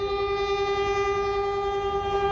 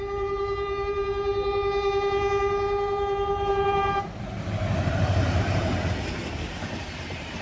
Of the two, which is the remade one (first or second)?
second